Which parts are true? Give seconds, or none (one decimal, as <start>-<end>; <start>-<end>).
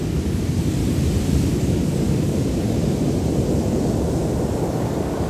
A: 0.8-1.5; 2.8-4.6